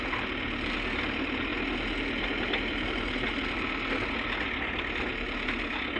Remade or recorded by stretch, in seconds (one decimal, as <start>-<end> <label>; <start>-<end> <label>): 0.0-6.0 recorded